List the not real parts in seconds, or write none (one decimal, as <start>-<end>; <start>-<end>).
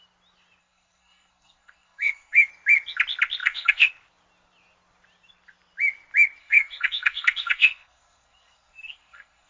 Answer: 0.6-2.5; 3.4-3.9; 6.4-9.5